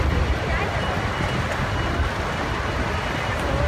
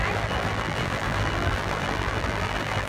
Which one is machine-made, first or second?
second